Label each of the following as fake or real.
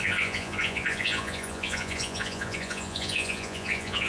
fake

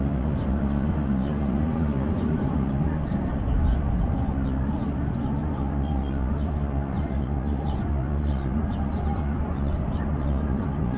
fake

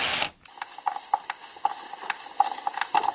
real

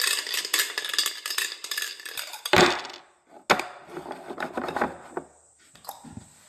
real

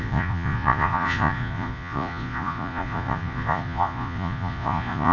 fake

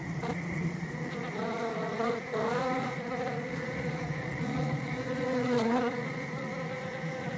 fake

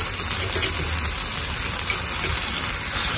real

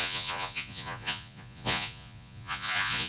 fake